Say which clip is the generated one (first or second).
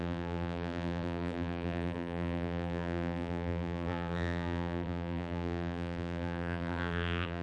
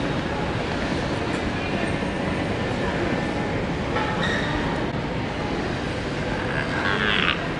first